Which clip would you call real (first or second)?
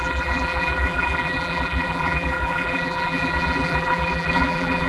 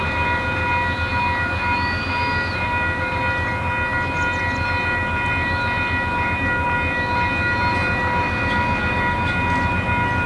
second